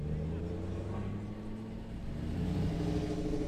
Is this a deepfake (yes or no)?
no